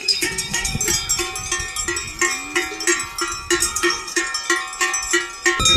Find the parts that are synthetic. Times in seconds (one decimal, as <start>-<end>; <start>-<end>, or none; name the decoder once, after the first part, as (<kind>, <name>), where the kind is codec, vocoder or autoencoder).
0.0-0.8 (codec, SNAC); 3.6-4.2